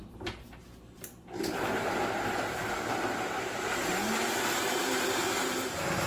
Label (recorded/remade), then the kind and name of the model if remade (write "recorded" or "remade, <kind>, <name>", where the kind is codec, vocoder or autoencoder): remade, vocoder, BigVGAN v2